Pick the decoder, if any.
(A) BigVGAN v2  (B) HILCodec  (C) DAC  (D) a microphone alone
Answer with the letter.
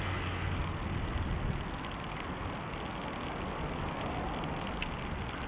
D